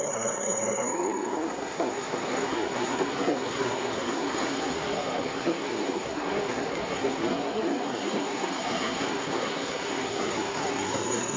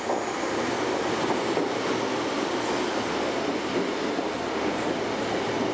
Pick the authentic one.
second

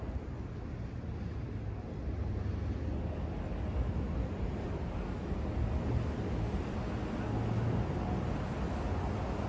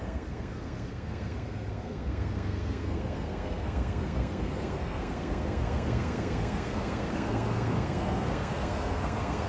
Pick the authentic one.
first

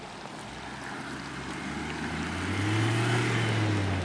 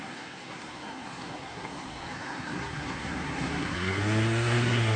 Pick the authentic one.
first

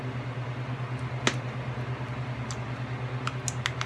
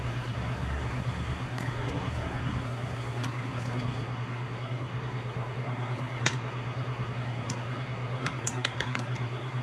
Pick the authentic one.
first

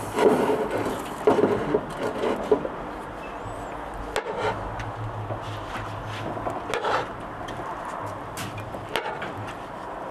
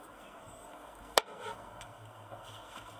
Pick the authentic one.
first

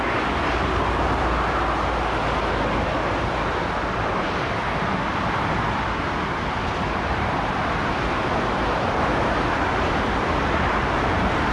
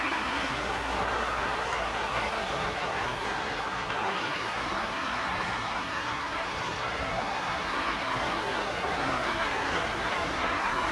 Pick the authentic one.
first